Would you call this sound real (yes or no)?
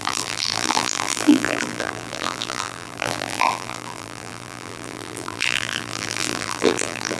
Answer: no